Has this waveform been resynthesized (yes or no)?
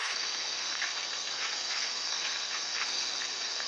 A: yes